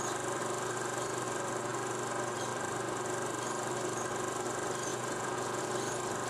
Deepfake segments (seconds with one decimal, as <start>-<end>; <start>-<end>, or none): 4.9-5.6